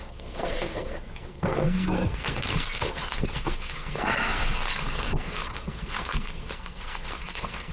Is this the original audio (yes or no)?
no